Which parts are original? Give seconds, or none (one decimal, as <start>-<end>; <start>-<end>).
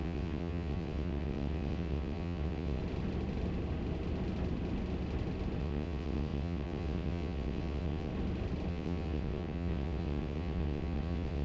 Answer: 2.8-5.6; 8.1-8.7